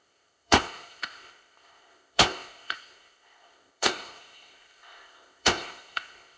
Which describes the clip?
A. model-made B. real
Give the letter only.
A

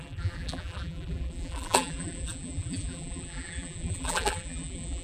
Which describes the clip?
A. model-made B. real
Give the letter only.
A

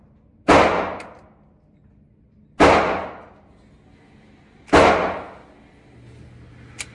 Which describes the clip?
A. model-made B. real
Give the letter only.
B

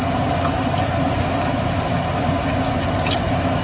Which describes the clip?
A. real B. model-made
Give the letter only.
A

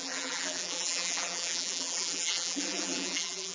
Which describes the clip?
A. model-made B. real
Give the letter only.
A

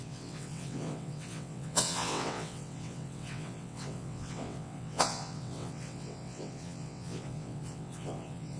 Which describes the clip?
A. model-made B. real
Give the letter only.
A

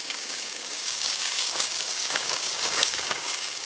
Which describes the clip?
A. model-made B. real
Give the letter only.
A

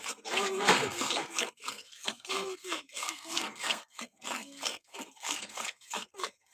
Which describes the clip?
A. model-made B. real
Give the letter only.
A